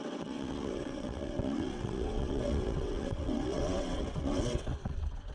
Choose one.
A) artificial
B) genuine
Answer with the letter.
A